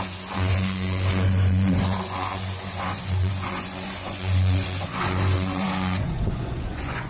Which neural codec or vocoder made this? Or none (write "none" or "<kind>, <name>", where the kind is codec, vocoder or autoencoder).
vocoder, Vocos